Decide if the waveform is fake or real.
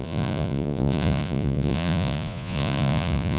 fake